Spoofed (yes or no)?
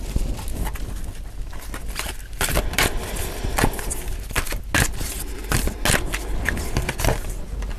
no